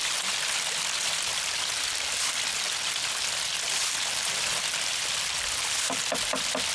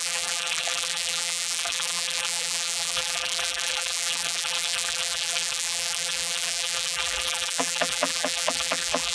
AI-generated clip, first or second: second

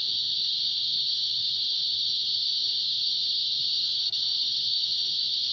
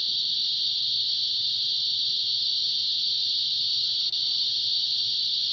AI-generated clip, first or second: first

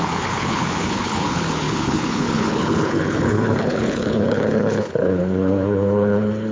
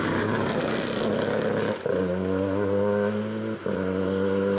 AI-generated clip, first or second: first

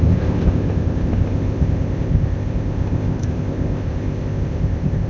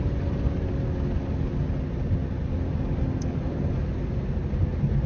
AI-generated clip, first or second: first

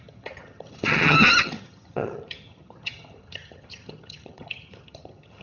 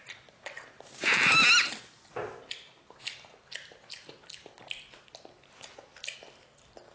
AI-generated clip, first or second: first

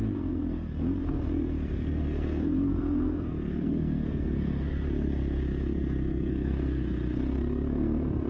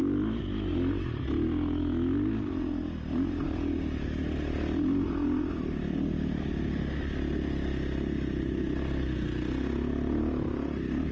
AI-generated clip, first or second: first